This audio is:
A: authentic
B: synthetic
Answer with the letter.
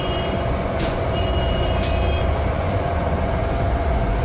B